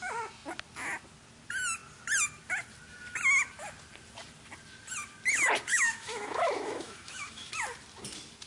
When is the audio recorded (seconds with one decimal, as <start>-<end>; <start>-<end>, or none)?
0.0-5.7; 7.5-8.5